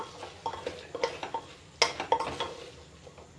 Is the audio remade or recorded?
recorded